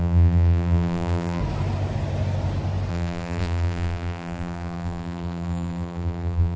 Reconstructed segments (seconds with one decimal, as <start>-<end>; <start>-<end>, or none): 0.0-1.4; 2.9-6.6